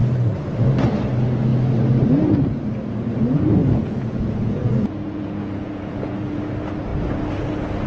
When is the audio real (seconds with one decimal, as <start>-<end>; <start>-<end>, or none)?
0.0-3.6; 6.4-7.9